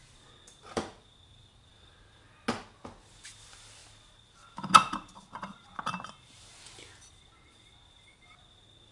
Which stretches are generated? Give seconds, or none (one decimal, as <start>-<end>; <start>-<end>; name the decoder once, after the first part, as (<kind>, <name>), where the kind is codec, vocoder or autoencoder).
none